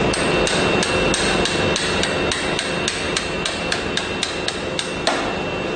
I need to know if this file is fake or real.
real